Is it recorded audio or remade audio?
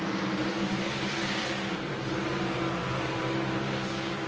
remade